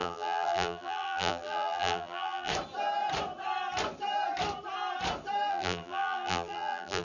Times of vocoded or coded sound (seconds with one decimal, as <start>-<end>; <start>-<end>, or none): 0.0-2.5; 5.5-7.0

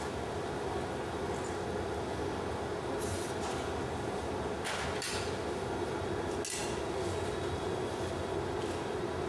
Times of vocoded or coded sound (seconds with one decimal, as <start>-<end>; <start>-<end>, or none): none

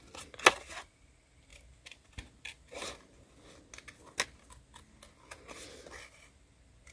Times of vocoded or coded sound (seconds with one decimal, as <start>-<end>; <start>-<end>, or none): none

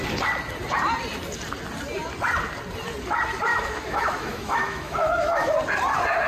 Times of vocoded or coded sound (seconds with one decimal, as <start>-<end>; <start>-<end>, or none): 3.5-5.5